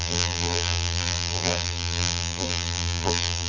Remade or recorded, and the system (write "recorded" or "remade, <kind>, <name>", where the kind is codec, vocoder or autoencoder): remade, vocoder, BigVGAN v2